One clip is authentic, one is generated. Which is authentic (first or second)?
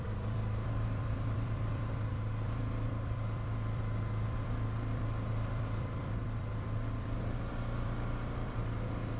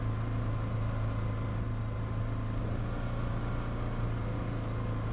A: second